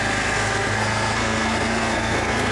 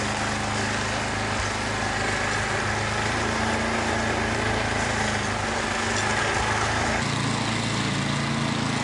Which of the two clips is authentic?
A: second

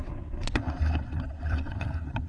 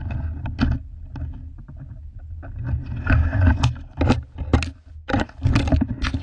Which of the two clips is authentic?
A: second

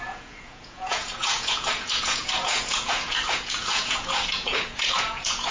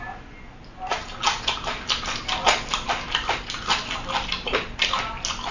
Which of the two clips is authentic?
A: second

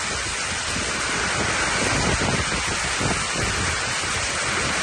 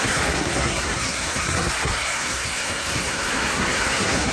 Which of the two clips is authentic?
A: first